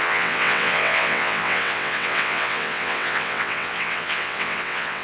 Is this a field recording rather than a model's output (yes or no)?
no